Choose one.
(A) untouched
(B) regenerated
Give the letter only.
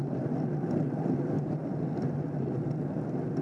A